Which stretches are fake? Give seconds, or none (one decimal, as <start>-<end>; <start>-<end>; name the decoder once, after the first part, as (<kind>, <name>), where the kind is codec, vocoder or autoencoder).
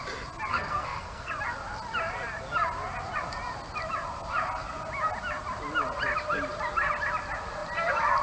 0.5-1.3 (codec, SNAC)